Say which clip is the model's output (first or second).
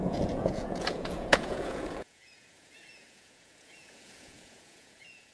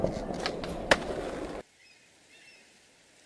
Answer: first